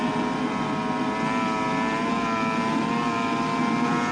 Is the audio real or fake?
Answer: real